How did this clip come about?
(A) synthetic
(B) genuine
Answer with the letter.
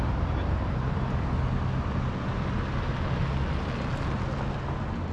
B